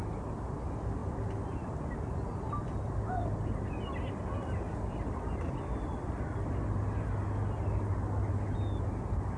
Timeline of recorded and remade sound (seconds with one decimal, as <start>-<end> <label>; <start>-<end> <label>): 0.0-9.4 recorded

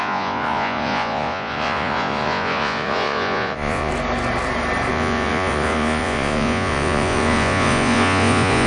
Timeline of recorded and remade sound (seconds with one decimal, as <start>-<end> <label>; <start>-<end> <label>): 0.0-3.9 remade; 3.9-4.9 recorded; 4.9-8.7 remade

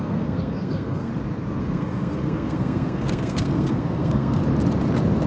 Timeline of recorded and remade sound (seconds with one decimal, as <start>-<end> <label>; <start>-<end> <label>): 0.0-1.1 remade; 1.1-1.6 recorded; 1.6-4.4 remade; 4.4-5.3 recorded

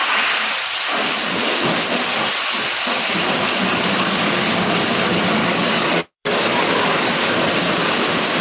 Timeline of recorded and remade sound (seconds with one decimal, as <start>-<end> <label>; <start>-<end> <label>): 0.0-3.7 recorded; 3.7-4.8 remade; 4.8-5.4 recorded; 5.4-7.1 remade; 7.1-8.4 recorded

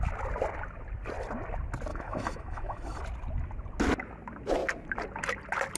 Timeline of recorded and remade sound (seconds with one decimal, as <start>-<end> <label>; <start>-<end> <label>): 0.0-1.9 recorded; 1.9-3.0 remade; 3.0-5.8 recorded

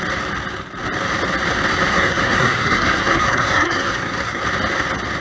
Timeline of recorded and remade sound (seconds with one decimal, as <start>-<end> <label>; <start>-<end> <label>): 0.0-1.9 recorded; 1.9-4.4 remade; 4.4-5.2 recorded